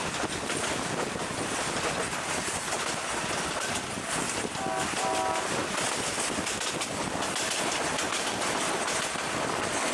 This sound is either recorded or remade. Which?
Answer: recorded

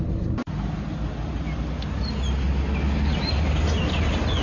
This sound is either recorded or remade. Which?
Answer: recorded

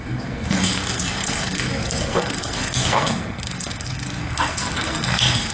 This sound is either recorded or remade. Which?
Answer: remade